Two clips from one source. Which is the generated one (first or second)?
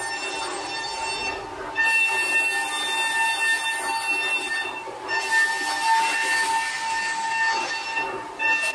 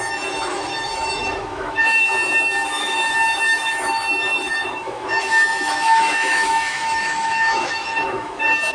second